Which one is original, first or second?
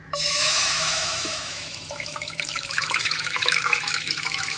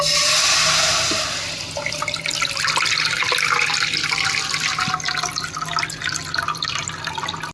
second